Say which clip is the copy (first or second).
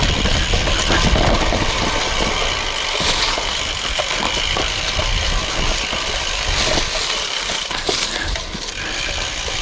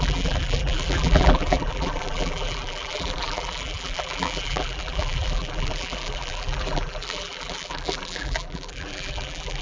second